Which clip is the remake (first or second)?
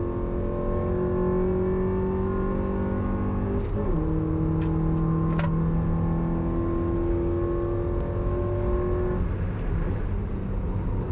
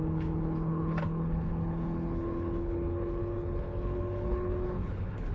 second